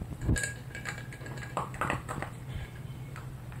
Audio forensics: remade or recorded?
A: remade